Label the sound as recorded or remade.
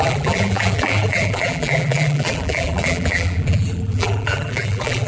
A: remade